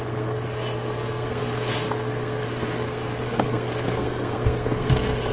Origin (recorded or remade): remade